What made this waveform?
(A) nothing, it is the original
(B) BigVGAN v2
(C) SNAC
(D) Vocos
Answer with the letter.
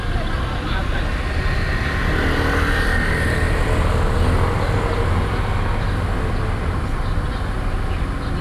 A